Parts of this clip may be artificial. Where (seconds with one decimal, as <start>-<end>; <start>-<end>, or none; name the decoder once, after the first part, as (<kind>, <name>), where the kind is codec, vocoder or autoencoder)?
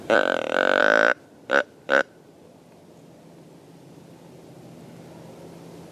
none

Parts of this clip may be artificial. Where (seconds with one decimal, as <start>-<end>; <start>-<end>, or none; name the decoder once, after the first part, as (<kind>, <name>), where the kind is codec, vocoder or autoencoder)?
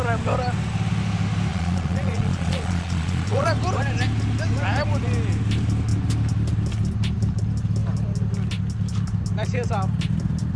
1.5-3.5 (vocoder, Vocos)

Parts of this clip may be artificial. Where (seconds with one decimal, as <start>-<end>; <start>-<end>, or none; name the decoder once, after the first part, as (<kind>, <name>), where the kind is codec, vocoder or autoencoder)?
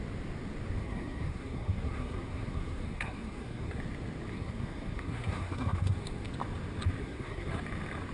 0.8-3.8 (codec, SNAC); 4.3-6.3; 7.0-7.6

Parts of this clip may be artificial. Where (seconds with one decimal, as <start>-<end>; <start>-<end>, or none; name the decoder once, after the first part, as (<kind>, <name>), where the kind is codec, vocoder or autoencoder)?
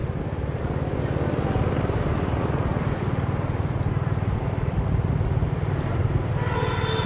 0.0-0.6 (vocoder, BigVGAN v2); 2.7-5.9